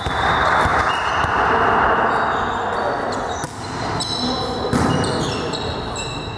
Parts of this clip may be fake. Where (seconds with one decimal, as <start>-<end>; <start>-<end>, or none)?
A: none